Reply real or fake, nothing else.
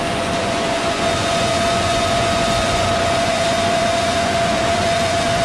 fake